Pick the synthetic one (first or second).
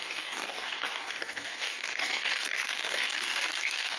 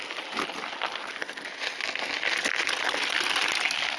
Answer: first